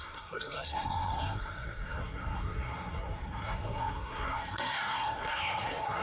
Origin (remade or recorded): remade